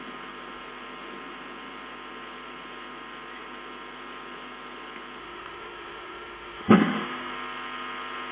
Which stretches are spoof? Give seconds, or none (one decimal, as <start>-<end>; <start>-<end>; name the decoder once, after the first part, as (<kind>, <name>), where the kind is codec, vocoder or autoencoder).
5.2-7.3 (autoencoder, DAC-VAE)